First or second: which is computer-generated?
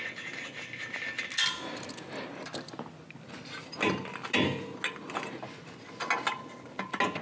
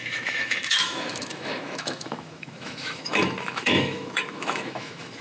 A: second